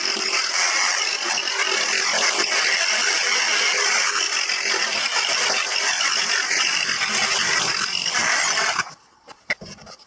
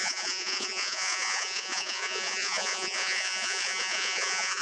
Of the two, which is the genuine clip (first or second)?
first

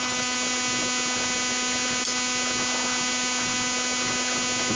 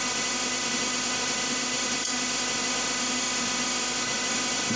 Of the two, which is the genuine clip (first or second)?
first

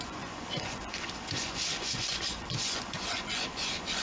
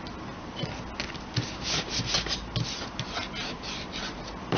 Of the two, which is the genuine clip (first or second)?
second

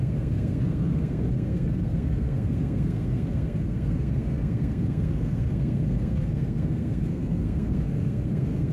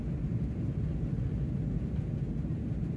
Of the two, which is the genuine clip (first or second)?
second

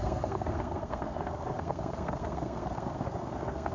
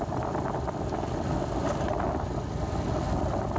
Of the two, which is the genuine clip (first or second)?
second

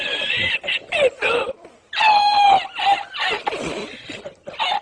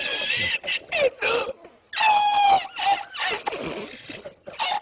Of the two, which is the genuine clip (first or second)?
second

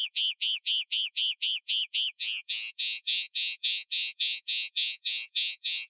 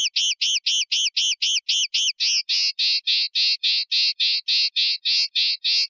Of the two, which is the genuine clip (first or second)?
second